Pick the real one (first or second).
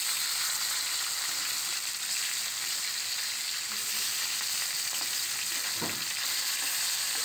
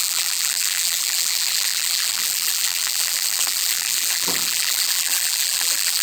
first